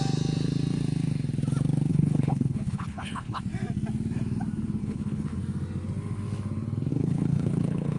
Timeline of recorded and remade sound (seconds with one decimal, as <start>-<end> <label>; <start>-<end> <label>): 0.0-1.9 recorded; 1.9-3.4 remade; 3.4-4.8 recorded; 4.8-5.4 remade; 5.4-6.9 recorded; 6.9-8.0 remade